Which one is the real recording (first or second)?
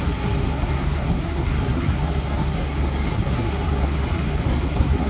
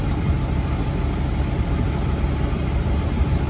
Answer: second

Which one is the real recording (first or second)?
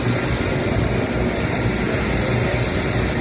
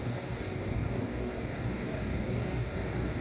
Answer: first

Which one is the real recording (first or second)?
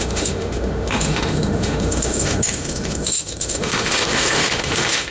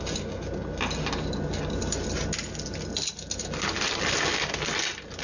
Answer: second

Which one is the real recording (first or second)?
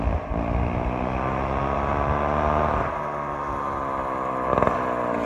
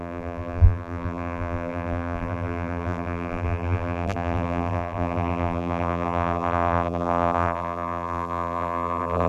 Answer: first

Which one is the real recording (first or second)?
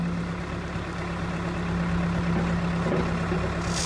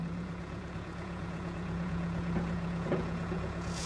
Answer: first